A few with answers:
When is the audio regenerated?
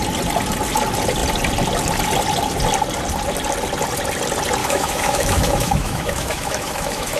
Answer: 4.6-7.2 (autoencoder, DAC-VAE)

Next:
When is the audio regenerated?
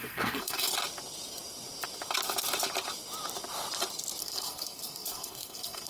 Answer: 0.0-0.7 (codec, SNAC); 4.2-5.9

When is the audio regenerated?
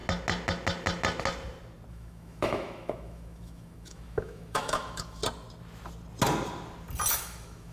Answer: 1.9-5.2 (autoencoder, DAC-VAE); 7.1-7.7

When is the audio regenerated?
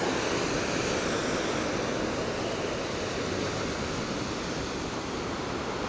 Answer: none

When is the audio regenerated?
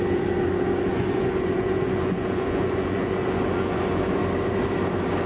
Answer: 0.9-4.1 (vocoder, Vocos)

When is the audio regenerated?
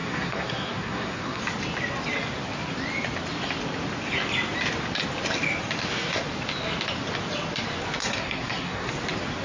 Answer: 0.0-1.4 (codec, SNAC); 8.0-8.9